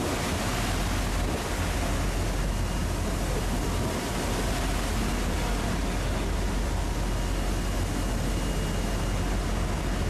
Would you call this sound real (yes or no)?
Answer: yes